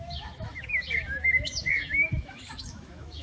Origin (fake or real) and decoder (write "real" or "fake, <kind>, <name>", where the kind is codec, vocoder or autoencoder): fake, autoencoder, DAC-VAE